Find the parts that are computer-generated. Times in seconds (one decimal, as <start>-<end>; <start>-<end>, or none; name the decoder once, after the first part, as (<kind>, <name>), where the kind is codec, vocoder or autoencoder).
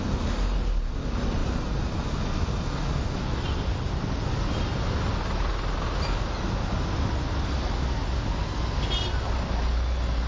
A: none